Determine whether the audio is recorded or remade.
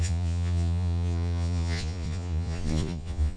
remade